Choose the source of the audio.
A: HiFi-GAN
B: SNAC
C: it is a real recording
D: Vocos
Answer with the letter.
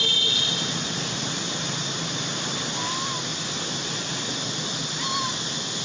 C